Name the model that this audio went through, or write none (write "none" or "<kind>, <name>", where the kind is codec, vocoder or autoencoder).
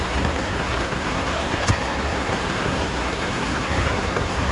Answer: codec, SNAC